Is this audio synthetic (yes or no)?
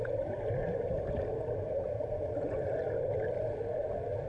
yes